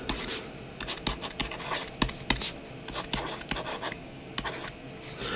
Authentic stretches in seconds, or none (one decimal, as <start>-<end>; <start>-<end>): 0.0-3.7; 4.3-5.4